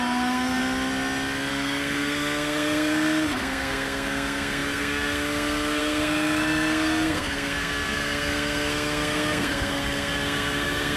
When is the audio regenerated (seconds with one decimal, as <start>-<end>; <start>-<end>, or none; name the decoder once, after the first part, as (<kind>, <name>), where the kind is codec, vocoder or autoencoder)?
0.0-0.6 (codec, SNAC); 1.5-11.0